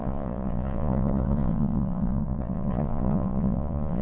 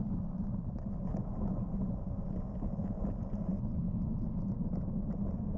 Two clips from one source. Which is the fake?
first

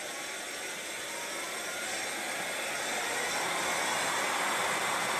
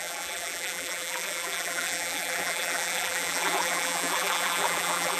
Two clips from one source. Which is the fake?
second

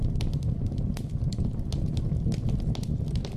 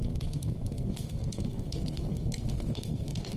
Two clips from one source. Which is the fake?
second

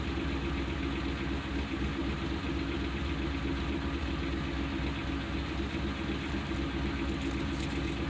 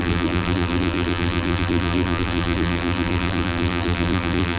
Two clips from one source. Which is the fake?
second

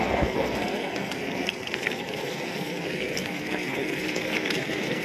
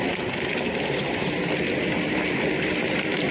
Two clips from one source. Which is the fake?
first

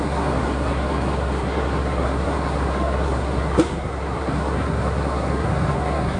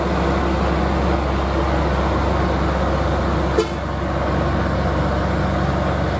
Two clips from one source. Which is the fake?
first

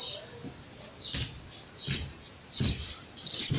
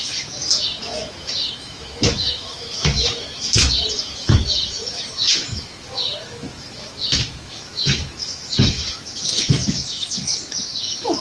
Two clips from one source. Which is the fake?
second